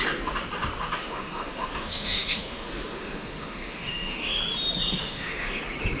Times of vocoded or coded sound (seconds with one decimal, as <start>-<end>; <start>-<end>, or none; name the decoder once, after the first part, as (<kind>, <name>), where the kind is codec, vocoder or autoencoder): 1.0-4.4 (autoencoder, DAC-VAE); 5.0-5.6